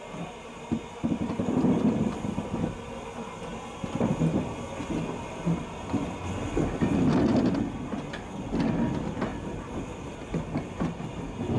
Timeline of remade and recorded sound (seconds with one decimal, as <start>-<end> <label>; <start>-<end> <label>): 0.0-11.6 recorded